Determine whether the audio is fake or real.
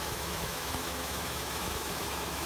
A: fake